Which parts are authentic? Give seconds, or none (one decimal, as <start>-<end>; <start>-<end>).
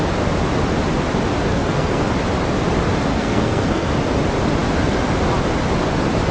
0.0-1.5; 2.1-3.1; 3.9-6.3